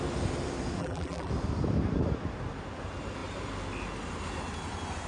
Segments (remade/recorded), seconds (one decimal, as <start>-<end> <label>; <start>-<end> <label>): 0.0-0.8 recorded; 0.8-1.3 remade; 1.3-5.1 recorded